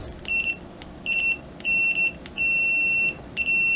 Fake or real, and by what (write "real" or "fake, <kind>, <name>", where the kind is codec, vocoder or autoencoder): real